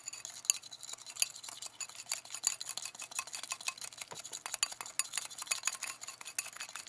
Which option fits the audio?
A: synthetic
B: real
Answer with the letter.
B